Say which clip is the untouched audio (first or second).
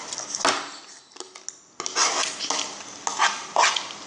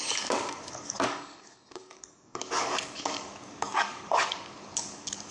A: first